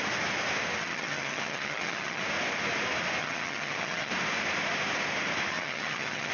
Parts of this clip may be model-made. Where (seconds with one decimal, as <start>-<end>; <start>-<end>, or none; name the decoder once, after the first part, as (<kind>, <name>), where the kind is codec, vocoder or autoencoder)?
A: 0.8-2.2 (vocoder, HiFi-GAN); 3.2-4.1; 5.5-6.3